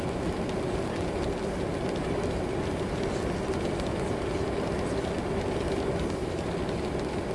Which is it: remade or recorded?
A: recorded